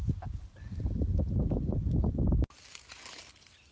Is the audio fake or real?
real